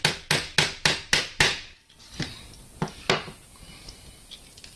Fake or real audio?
real